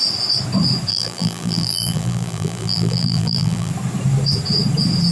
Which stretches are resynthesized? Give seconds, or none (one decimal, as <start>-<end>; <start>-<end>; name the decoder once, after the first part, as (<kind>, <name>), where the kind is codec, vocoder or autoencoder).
0.9-3.7 (vocoder, BigVGAN v2)